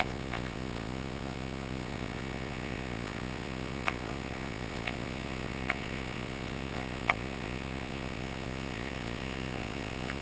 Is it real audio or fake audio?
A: fake